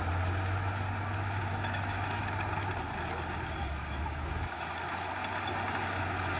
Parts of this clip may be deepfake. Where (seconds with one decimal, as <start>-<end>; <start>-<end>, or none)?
1.5-2.2; 3.6-5.1